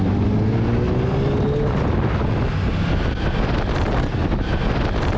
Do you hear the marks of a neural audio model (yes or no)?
no